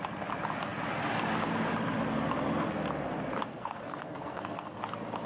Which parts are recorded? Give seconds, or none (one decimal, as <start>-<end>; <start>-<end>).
0.0-3.5; 4.8-5.3